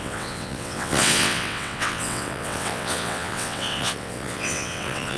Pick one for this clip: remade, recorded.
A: remade